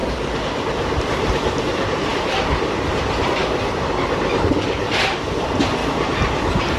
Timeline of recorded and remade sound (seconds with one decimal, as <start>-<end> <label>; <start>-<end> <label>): 0.0-1.0 recorded; 1.0-5.8 remade; 5.8-6.8 recorded